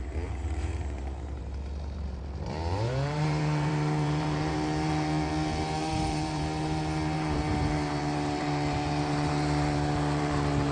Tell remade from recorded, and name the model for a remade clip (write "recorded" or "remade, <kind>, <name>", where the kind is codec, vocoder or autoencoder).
remade, vocoder, BigVGAN v2